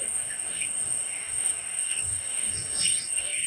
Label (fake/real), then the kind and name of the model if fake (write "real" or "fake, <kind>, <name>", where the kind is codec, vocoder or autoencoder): fake, codec, DAC